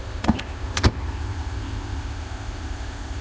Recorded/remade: remade